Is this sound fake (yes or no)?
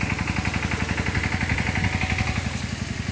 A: no